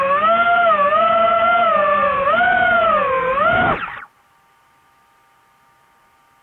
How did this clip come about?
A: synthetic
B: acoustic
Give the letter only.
A